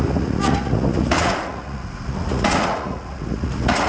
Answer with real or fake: fake